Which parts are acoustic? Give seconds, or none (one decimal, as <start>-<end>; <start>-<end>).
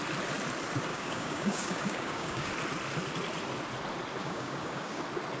0.0-0.9; 2.5-4.2; 5.0-5.4